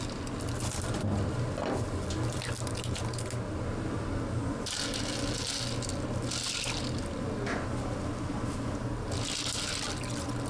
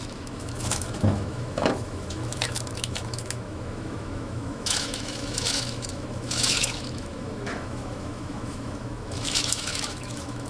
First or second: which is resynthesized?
second